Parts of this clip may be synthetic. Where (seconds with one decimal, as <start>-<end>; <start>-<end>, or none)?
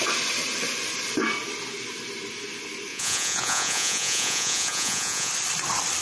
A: 2.9-5.3